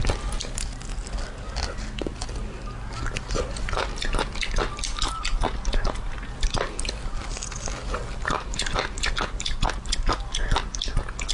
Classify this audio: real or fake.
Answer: real